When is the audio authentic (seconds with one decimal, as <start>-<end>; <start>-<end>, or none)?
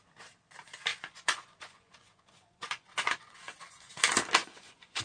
0.0-0.9; 3.9-4.4